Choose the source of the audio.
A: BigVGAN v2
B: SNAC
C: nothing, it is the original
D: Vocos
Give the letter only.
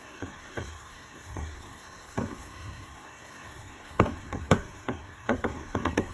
B